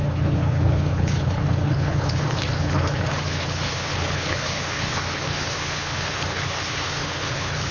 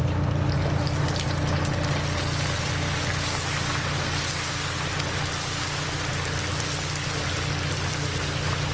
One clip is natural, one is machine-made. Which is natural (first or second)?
second